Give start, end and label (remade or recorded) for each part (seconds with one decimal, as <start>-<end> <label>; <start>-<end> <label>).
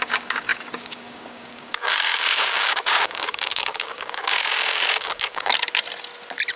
0.0-5.5 remade; 5.5-6.6 recorded